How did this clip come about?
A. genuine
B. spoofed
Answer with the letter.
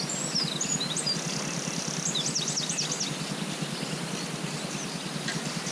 A